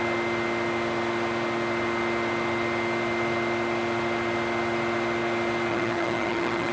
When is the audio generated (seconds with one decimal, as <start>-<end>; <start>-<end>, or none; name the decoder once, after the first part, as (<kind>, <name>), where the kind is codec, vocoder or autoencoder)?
5.7-6.7 (vocoder, HiFi-GAN)